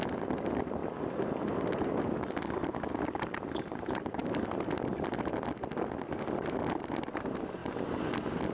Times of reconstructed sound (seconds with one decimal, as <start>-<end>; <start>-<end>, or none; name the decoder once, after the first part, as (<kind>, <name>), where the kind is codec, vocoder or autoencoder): none